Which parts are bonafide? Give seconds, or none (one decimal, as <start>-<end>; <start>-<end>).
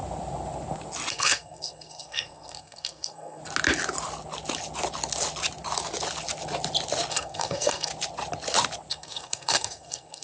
0.0-1.1; 3.4-7.1; 7.9-8.9